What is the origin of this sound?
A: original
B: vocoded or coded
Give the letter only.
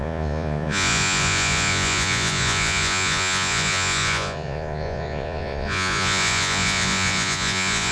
B